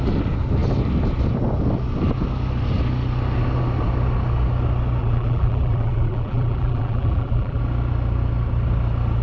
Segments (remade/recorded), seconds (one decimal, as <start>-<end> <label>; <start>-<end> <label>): 0.0-5.0 recorded; 5.0-7.6 remade; 7.6-9.2 recorded